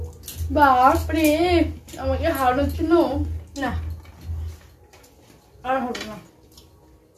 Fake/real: real